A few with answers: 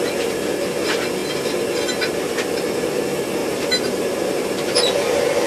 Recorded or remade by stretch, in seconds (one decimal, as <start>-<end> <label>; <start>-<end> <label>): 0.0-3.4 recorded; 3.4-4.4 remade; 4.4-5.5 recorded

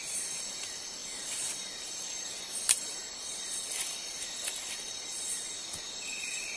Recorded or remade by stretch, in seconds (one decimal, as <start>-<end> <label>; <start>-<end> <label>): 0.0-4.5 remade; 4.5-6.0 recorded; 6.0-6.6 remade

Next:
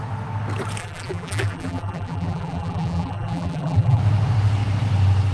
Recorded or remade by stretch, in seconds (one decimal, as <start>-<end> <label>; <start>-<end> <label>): 0.0-0.8 recorded; 0.8-4.0 remade; 4.0-5.3 recorded

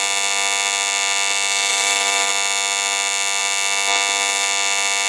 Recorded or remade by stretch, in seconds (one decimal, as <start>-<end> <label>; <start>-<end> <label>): 0.0-1.7 recorded; 1.7-2.3 remade; 2.3-5.1 recorded

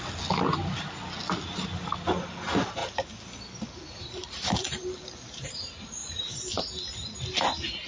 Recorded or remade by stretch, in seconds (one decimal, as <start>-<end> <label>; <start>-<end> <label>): 0.0-2.8 recorded; 2.8-5.5 remade; 5.5-6.0 recorded; 6.0-6.6 remade; 6.6-7.9 recorded